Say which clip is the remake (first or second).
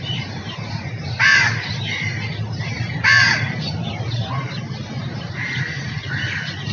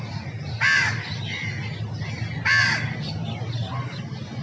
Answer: first